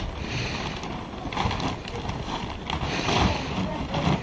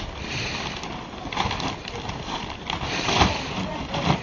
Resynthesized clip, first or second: second